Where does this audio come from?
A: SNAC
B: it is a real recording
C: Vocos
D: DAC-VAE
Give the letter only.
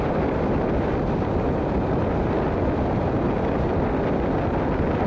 B